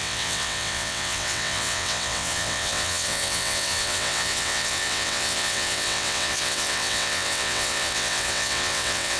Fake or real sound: fake